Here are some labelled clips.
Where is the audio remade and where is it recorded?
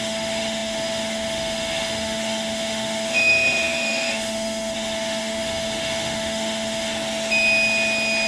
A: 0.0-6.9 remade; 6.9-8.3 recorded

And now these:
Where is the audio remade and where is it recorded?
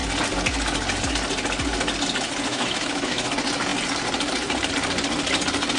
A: 0.0-2.5 recorded; 2.5-3.3 remade; 3.3-5.8 recorded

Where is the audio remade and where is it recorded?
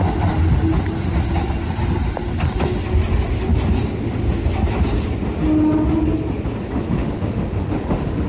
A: 0.0-7.0 recorded; 7.0-8.3 remade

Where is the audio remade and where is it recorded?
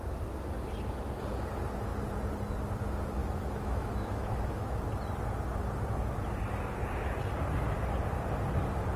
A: 0.0-3.2 recorded; 3.2-4.8 remade; 4.8-9.0 recorded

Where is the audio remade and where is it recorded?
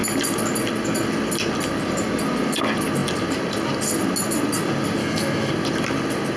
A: 0.0-5.0 recorded; 5.0-5.5 remade; 5.5-6.4 recorded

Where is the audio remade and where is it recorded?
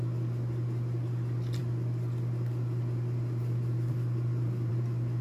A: 0.0-5.2 recorded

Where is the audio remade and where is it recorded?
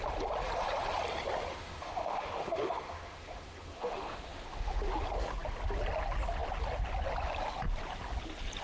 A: 0.0-1.5 recorded; 1.5-4.8 remade; 4.8-8.6 recorded